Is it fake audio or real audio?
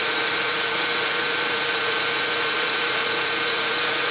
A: fake